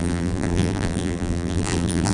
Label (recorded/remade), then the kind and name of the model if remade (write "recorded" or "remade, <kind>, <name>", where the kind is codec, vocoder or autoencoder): remade, vocoder, BigVGAN v2